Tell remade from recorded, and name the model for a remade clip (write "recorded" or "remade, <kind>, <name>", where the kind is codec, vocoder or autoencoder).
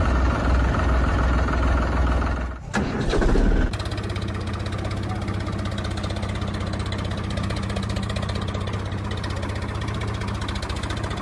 recorded